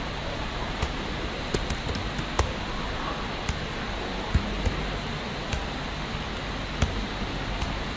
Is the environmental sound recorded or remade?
recorded